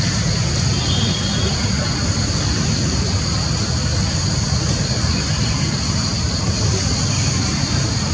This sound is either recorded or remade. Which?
recorded